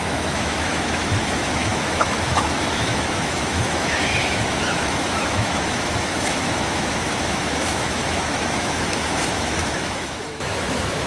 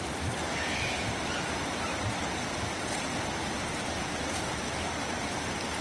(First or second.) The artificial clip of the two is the first